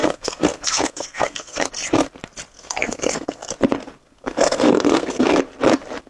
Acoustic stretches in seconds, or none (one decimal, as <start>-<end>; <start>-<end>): 1.7-2.5; 3.5-4.0; 5.4-6.1